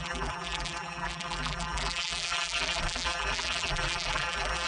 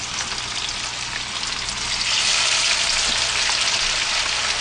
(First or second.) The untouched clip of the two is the second